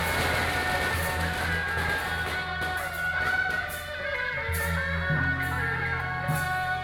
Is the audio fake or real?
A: real